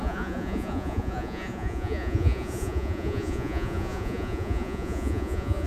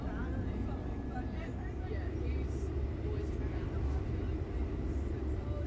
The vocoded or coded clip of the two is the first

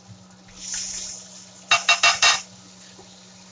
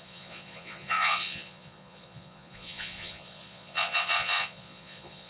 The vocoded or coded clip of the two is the second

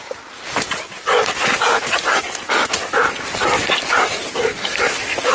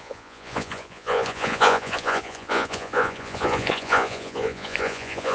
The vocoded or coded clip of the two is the second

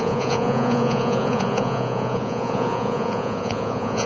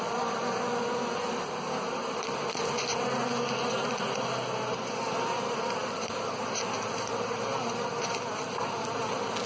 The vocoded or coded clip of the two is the first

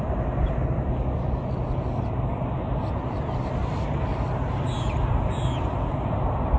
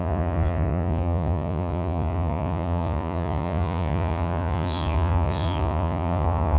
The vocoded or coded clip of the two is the second